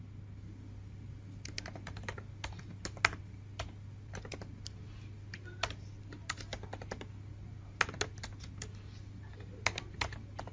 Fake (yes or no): no